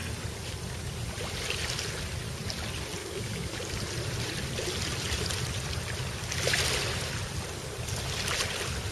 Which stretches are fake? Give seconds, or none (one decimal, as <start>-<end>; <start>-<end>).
3.0-3.6